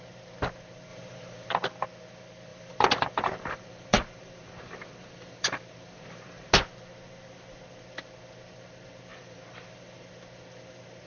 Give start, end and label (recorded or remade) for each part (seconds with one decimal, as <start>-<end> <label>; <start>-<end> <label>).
0.0-0.9 recorded; 0.9-1.5 remade; 1.5-2.5 recorded; 2.5-6.5 remade; 6.5-9.1 recorded; 9.1-10.1 remade; 10.1-11.1 recorded